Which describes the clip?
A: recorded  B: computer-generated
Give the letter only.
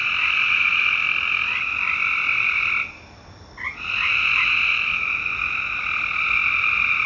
A